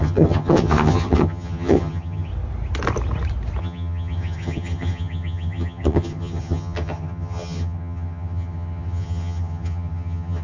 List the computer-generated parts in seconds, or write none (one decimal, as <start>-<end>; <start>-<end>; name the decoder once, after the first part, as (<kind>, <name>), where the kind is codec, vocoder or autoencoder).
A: 0.0-2.3 (vocoder, HiFi-GAN); 3.6-10.4